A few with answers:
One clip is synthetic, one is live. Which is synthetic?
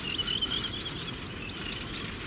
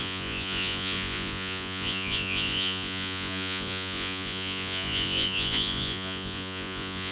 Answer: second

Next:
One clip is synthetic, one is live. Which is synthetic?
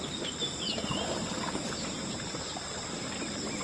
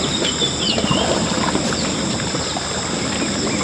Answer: second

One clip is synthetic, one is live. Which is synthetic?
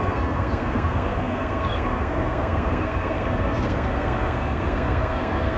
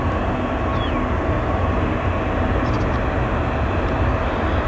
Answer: first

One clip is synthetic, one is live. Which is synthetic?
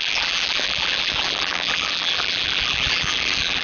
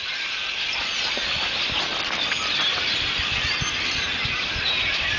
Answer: first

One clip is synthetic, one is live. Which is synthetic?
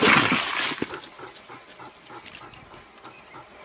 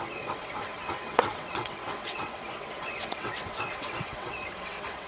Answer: second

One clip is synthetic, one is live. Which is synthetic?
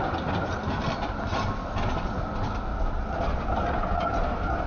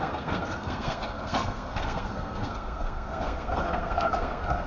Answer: second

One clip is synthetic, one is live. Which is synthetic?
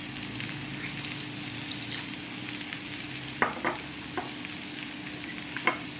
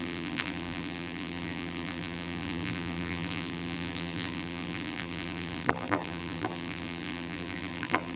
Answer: second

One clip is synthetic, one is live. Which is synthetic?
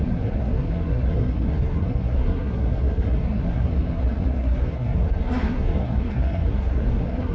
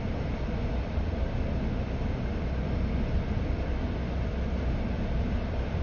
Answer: first